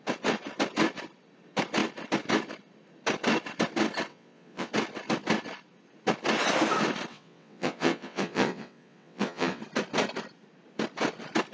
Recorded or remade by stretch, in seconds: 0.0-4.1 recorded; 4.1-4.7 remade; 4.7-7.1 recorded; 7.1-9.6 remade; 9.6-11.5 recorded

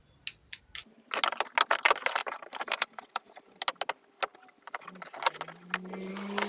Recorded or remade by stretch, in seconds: 0.0-2.2 recorded; 2.2-3.6 remade; 3.6-6.5 recorded

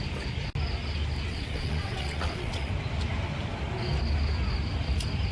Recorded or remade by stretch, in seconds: 0.0-1.3 recorded; 1.3-2.7 remade; 2.7-5.3 recorded

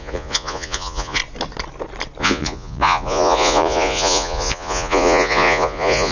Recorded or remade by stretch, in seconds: 0.0-1.2 remade; 1.2-2.2 recorded; 2.2-6.1 remade